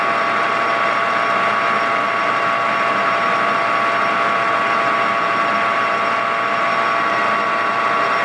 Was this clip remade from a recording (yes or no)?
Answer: no